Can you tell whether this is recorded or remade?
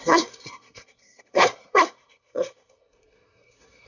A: remade